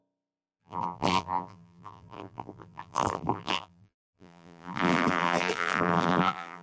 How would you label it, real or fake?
fake